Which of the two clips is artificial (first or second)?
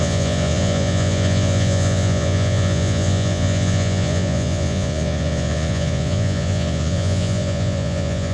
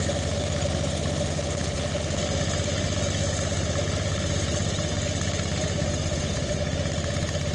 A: first